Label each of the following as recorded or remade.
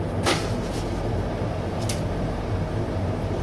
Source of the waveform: recorded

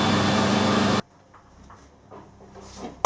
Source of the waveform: recorded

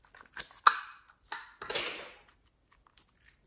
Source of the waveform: recorded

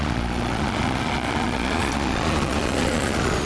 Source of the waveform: remade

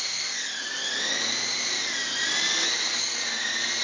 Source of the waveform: recorded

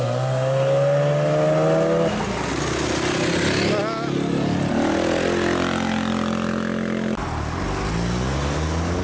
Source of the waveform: recorded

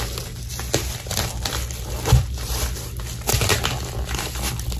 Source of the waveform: recorded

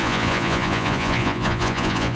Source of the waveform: remade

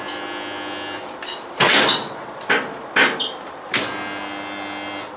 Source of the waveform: recorded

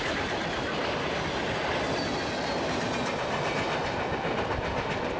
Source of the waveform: recorded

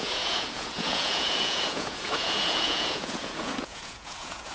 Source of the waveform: remade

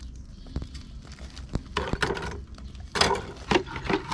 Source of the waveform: recorded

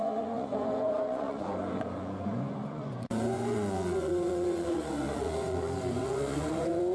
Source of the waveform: remade